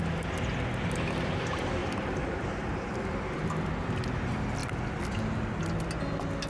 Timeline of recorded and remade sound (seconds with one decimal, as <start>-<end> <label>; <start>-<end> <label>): 0.0-1.8 recorded; 1.8-3.7 remade; 3.7-6.5 recorded